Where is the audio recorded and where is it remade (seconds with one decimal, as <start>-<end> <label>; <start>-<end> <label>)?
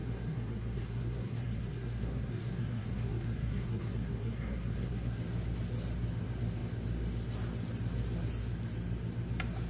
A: 0.0-5.2 remade; 5.2-9.7 recorded